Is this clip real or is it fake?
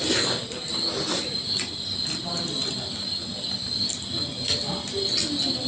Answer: real